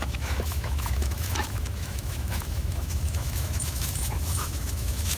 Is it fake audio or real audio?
fake